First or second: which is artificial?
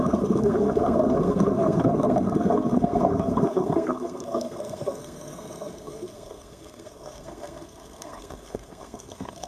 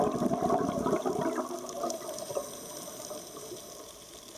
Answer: first